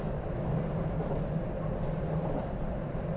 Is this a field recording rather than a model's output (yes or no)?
yes